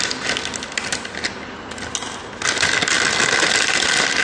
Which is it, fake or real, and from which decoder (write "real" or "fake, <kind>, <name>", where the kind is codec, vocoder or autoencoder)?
real